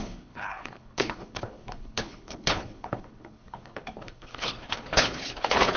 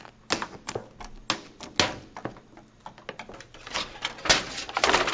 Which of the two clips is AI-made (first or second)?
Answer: first